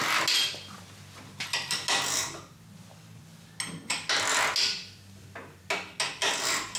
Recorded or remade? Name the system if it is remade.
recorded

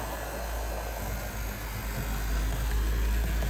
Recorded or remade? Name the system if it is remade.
recorded